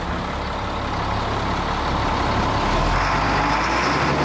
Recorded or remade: recorded